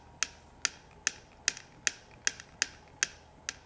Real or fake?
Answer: real